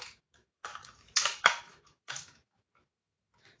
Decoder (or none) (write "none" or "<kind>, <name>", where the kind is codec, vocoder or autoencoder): autoencoder, DAC-VAE